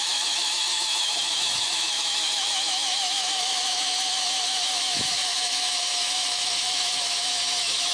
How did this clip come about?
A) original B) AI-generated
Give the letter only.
B